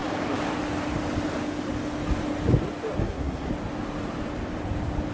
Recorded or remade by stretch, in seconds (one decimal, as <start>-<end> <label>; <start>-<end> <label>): 0.0-3.0 recorded; 3.0-3.5 remade; 3.5-5.1 recorded